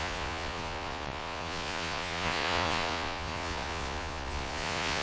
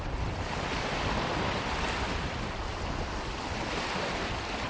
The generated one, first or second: first